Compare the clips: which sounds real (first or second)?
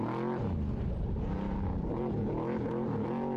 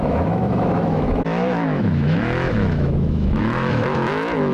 first